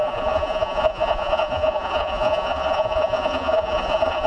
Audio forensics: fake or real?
fake